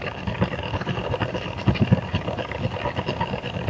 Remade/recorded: remade